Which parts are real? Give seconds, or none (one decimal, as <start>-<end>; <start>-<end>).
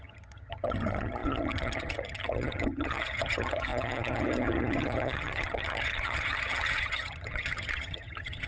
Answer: none